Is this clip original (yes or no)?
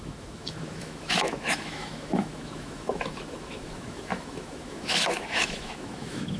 no